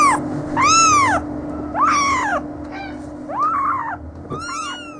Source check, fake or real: real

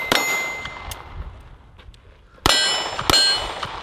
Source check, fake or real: real